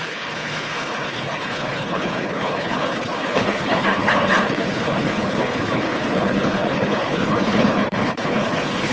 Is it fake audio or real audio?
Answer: fake